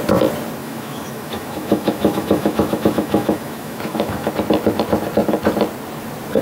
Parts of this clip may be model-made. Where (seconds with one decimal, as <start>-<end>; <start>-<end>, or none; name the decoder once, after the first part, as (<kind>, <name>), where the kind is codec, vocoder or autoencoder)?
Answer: 0.6-4.3 (autoencoder, DAC-VAE)